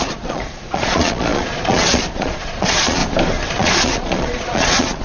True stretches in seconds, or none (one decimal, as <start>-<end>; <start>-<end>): 3.0-3.6